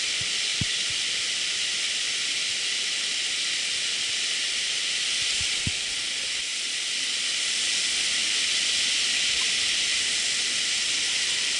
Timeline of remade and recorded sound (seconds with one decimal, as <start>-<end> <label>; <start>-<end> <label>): 0.0-0.5 recorded; 0.5-3.8 remade; 3.8-6.5 recorded; 6.5-7.0 remade; 7.0-7.8 recorded; 7.8-8.7 remade; 8.7-11.6 recorded